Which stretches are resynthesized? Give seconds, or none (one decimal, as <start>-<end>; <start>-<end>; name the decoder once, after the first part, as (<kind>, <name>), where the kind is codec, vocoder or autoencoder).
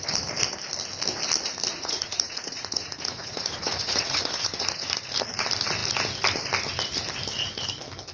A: 1.7-5.0 (vocoder, Vocos)